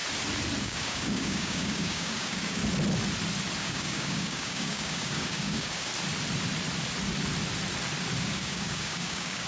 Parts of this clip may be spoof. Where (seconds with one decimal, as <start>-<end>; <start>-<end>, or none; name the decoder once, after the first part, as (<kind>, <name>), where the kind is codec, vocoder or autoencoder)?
0.6-2.6 (codec, DAC); 3.6-5.9; 8.2-9.5